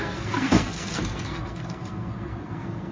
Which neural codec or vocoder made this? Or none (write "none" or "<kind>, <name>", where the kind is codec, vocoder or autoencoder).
codec, SNAC